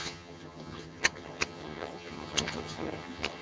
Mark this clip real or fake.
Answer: fake